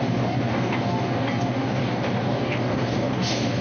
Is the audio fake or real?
fake